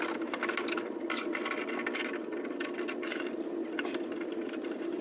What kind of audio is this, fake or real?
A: real